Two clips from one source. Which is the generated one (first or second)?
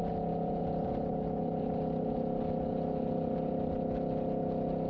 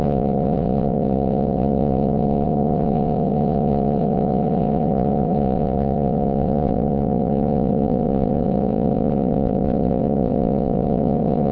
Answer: second